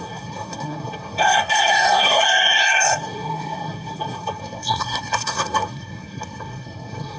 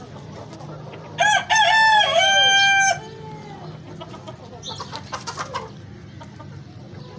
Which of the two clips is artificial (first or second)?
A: first